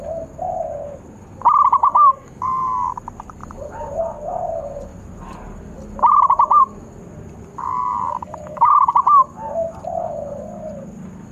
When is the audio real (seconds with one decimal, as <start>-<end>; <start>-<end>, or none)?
0.0-1.8; 2.9-7.7; 8.9-11.3